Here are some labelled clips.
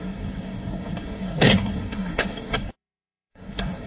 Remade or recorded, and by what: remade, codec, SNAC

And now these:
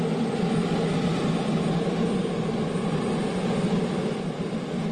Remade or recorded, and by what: recorded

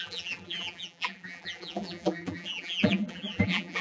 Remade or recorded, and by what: remade, vocoder, BigVGAN v2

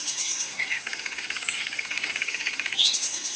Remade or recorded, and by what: remade, codec, SNAC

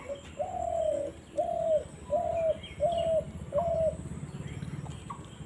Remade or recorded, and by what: recorded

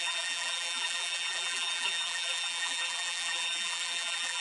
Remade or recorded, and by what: remade, vocoder, BigVGAN v2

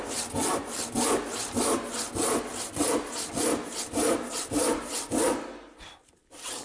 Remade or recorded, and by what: recorded